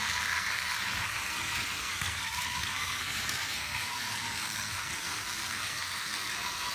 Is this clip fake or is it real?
fake